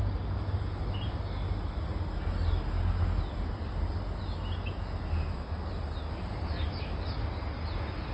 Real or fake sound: real